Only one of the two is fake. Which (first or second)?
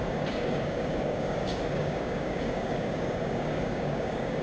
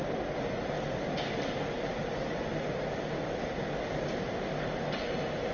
first